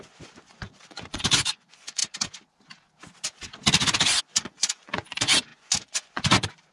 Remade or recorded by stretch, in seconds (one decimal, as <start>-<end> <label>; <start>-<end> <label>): 0.0-2.0 remade; 2.0-4.2 recorded; 4.2-6.7 remade